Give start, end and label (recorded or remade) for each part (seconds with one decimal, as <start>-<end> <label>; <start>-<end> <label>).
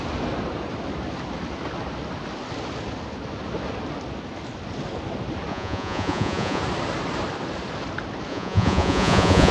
0.0-5.5 recorded; 5.5-6.6 remade; 6.6-8.3 recorded; 8.3-9.5 remade